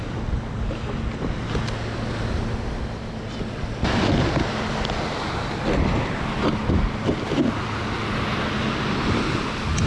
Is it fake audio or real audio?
real